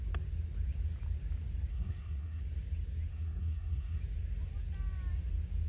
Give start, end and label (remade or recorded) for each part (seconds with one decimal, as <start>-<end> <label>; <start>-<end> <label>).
0.0-1.7 recorded; 1.7-2.4 remade; 2.4-3.1 recorded; 3.1-4.0 remade; 4.0-5.7 recorded